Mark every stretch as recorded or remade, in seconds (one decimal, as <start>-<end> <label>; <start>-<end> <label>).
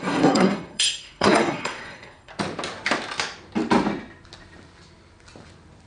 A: 0.0-2.3 remade; 2.3-5.9 recorded